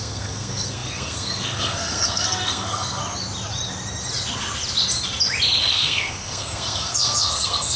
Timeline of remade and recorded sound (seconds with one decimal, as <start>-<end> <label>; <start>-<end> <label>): 0.0-3.0 remade; 3.0-5.6 recorded; 5.6-7.8 remade